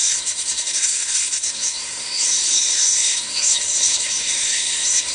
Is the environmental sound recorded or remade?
remade